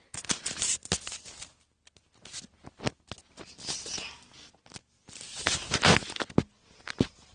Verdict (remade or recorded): recorded